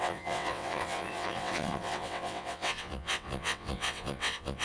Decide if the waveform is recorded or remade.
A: remade